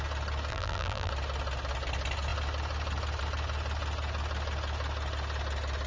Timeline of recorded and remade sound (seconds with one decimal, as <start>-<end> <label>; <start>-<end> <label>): 0.0-0.5 recorded; 0.5-1.1 remade; 1.1-5.9 recorded